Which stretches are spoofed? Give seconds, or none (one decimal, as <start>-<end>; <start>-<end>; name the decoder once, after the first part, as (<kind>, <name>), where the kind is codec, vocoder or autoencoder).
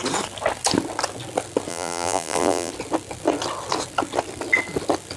1.7-2.7 (vocoder, BigVGAN v2)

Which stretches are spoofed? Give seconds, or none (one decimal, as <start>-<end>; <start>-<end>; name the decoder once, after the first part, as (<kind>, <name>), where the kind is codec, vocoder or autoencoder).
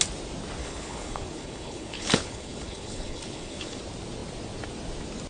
0.6-3.8 (codec, HILCodec)